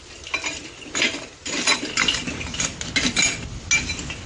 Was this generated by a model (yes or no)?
no